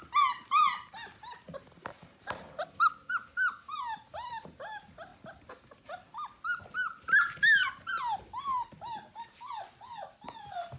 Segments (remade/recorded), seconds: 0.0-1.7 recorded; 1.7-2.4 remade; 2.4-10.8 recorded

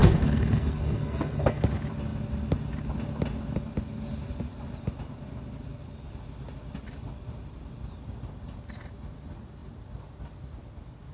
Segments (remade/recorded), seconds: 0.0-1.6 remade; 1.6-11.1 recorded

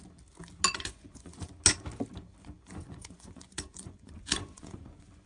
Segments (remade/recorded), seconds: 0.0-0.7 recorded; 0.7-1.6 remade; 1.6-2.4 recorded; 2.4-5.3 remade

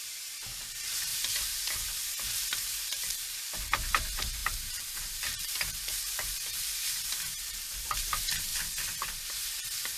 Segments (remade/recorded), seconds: 0.0-8.5 remade; 8.5-9.2 recorded; 9.2-10.0 remade